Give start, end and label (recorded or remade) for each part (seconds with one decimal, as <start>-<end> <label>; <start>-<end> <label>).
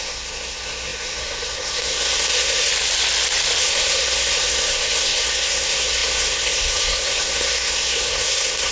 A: 0.0-2.7 remade; 2.7-3.6 recorded; 3.6-8.7 remade